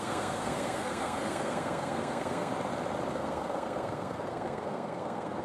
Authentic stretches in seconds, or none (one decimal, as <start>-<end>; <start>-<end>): 2.5-3.1